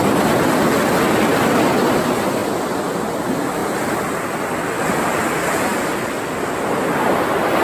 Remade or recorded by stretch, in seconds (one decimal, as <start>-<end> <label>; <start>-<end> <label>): 0.0-3.6 recorded; 3.6-4.2 remade; 4.2-7.6 recorded